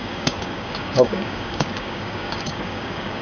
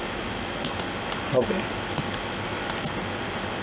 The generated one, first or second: first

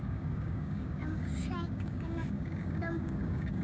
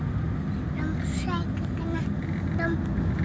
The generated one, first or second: first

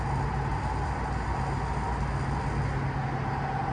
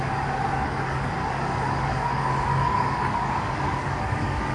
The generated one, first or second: second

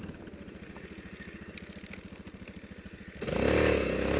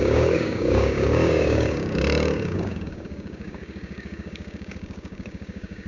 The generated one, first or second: second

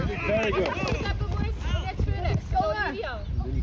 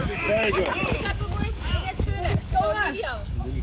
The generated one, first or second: second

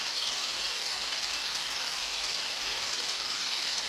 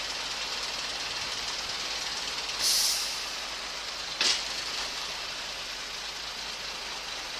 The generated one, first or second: first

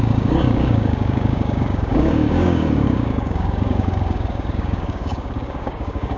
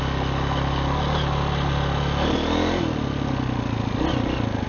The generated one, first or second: first